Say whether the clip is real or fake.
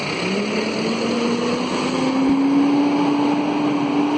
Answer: real